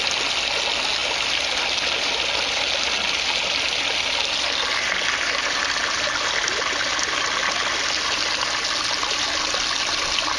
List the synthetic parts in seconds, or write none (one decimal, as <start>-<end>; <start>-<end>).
none